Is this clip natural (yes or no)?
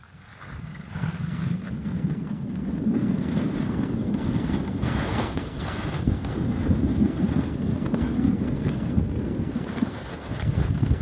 no